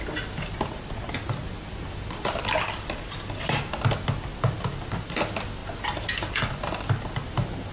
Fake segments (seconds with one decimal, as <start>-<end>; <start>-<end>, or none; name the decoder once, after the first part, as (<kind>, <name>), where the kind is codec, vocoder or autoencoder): 1.4-2.3 (vocoder, BigVGAN v2)